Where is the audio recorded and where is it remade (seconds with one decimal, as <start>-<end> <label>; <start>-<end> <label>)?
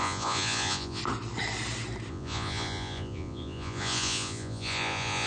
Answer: 0.0-1.0 remade; 1.0-2.1 recorded; 2.1-5.3 remade